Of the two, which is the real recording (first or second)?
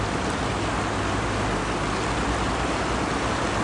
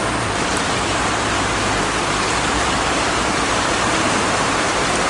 first